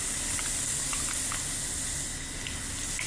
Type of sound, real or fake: real